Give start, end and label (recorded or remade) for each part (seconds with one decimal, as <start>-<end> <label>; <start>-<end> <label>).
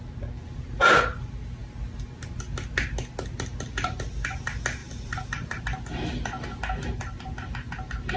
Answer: 0.0-4.8 recorded; 4.8-5.6 remade; 5.6-8.2 recorded